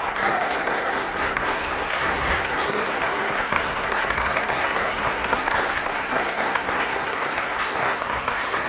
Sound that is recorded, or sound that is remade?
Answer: remade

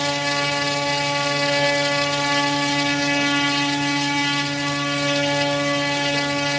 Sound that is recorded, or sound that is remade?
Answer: recorded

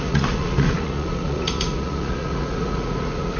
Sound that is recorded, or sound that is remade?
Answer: remade